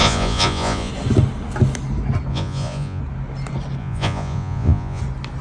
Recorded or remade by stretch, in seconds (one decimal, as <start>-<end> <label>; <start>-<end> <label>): 0.0-0.9 remade; 0.9-2.3 recorded; 2.3-3.0 remade; 3.0-3.8 recorded; 3.8-5.0 remade; 5.0-5.4 recorded